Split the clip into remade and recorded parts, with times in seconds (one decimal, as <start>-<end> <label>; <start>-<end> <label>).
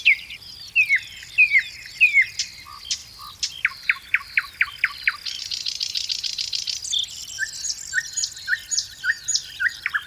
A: 0.0-10.1 recorded